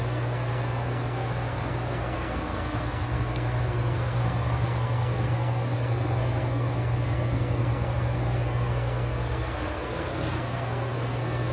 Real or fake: fake